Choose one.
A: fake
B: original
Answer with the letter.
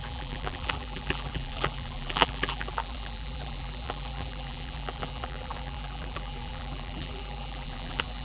A